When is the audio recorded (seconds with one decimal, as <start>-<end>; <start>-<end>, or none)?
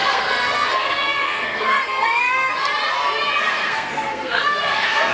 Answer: 2.7-3.4